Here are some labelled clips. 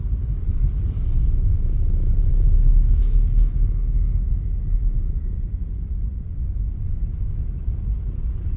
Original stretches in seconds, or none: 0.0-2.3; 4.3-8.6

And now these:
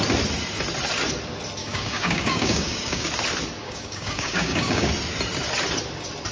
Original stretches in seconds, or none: 0.0-1.6; 3.1-3.6; 4.9-6.3

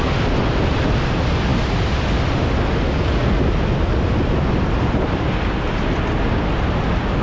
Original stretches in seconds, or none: 0.0-7.2